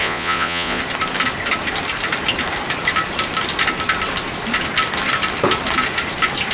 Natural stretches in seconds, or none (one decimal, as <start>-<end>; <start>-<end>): 0.8-6.5